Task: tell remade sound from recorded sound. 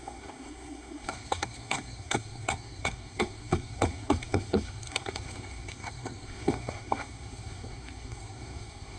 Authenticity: remade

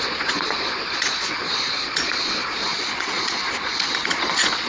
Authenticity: remade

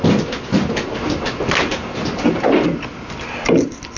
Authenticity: recorded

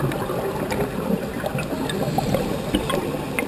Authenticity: recorded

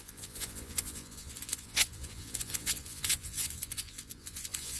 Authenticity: remade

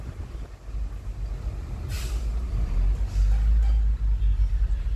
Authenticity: recorded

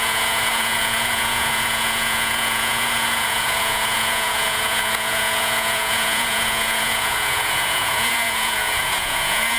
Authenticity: remade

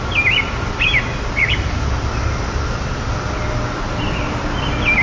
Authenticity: recorded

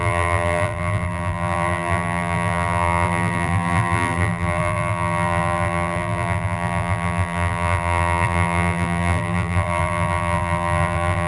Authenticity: remade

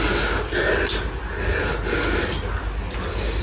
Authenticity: recorded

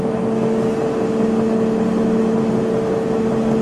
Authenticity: recorded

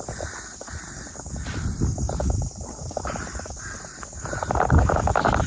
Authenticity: recorded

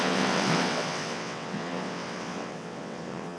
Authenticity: remade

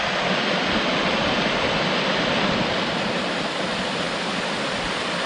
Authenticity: recorded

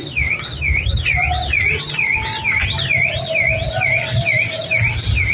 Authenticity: recorded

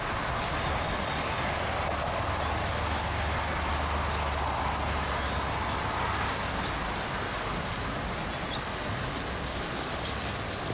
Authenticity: recorded